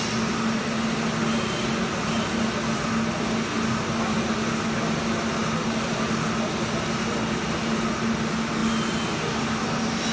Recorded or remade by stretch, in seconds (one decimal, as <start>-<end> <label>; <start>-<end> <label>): 0.0-10.1 recorded